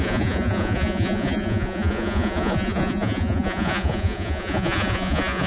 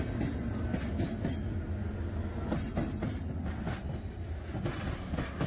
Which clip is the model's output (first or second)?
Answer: first